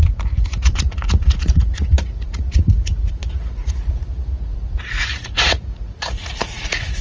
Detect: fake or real fake